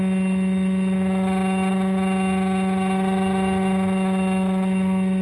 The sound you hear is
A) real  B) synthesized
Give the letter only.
A